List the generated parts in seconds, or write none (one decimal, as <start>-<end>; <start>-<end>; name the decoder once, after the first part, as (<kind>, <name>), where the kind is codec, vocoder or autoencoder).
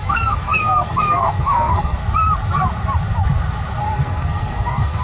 0.0-2.0 (codec, SNAC); 3.8-5.0